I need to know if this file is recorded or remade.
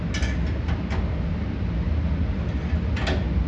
recorded